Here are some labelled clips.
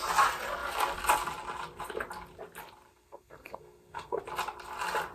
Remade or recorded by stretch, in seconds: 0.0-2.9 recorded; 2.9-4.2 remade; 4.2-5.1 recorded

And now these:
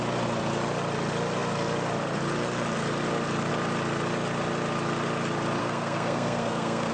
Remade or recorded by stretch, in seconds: 0.0-5.6 recorded; 5.6-6.9 remade

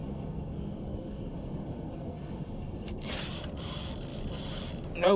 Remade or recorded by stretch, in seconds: 0.0-3.1 remade; 3.1-5.2 recorded

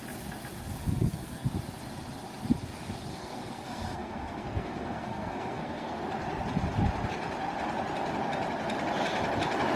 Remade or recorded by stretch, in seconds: 0.0-0.8 recorded; 0.8-1.5 remade; 1.5-3.1 recorded; 3.1-6.0 remade; 6.0-9.8 recorded